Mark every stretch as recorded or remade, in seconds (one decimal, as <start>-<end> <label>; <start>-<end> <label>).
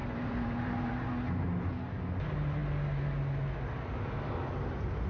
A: 0.0-0.9 remade; 0.9-5.1 recorded